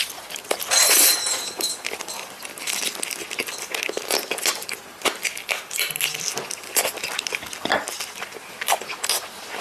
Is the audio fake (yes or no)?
no